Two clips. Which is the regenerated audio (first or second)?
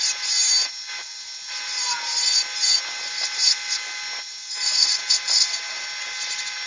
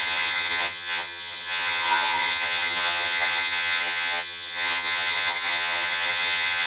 second